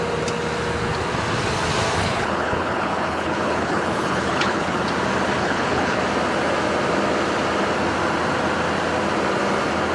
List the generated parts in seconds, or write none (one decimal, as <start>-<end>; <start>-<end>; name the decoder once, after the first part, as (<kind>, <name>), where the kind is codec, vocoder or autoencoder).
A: 2.0-4.8 (codec, HILCodec); 5.4-6.0